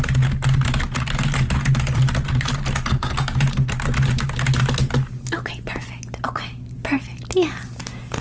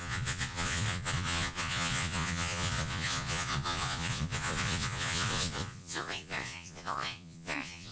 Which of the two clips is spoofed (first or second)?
second